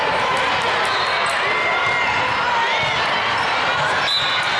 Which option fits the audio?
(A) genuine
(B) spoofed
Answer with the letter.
A